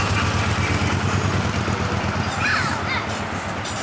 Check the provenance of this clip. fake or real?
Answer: real